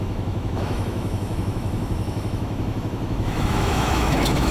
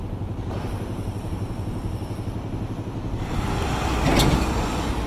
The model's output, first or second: first